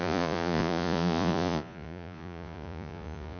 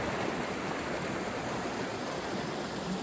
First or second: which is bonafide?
second